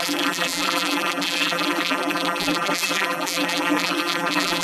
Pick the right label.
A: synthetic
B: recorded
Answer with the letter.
A